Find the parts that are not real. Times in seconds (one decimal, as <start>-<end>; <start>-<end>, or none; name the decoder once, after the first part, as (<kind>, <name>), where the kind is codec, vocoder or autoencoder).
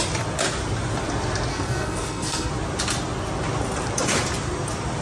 1.5-2.5 (codec, SNAC)